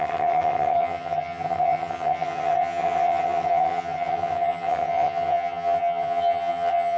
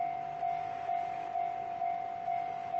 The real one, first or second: second